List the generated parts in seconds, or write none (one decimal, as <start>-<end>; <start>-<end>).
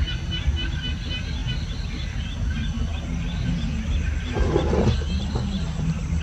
none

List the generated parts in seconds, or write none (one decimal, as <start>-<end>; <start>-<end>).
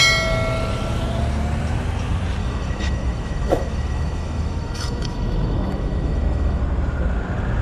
2.4-6.6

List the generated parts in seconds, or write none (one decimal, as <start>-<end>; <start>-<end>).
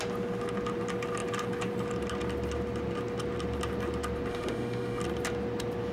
4.3-5.0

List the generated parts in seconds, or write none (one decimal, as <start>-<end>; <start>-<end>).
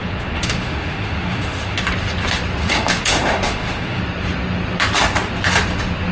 0.0-1.8; 2.6-4.0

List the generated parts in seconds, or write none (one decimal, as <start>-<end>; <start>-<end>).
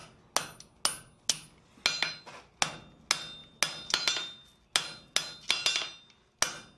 none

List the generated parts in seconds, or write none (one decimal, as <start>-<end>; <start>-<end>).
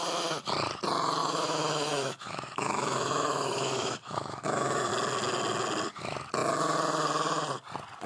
1.2-4.9